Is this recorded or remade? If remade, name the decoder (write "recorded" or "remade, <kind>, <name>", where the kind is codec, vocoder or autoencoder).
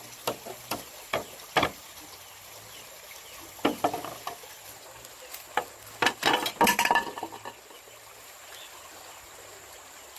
remade, vocoder, BigVGAN v2